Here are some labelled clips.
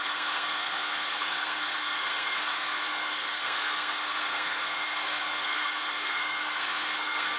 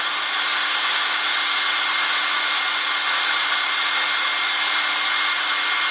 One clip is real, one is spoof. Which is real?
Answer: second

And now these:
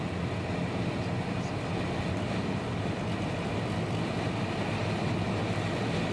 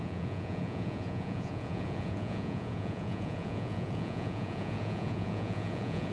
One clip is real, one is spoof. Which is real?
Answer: first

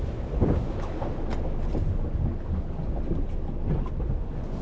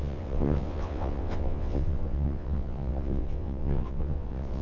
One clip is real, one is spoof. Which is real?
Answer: first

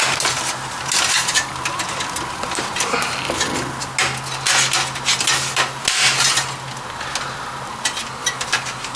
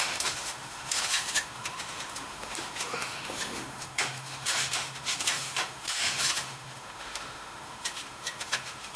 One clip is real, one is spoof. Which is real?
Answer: first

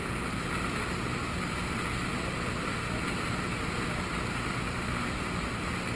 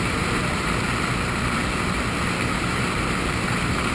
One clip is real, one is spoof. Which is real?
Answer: first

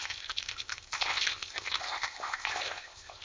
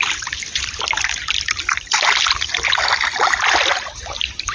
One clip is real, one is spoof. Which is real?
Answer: second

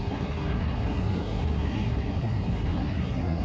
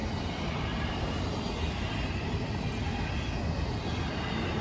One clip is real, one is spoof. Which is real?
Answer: second